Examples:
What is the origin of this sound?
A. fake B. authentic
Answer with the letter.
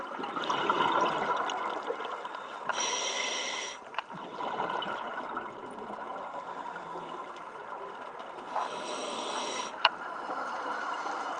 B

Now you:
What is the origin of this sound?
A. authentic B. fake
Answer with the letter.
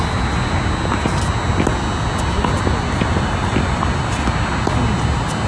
A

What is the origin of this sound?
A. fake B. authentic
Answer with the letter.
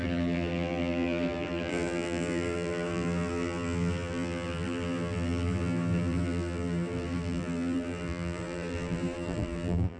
A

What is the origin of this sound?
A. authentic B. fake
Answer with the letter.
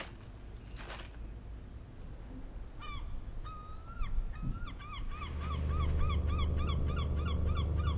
A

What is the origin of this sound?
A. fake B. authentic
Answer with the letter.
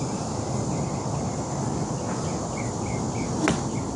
B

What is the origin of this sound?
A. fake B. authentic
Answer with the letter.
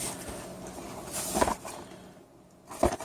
B